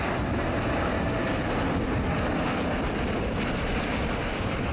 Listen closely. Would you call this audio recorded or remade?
recorded